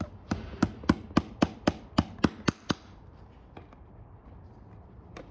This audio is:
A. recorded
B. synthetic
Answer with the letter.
A